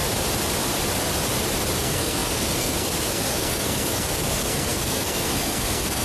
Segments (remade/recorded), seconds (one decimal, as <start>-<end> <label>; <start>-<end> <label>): 0.0-1.8 recorded; 1.8-6.0 remade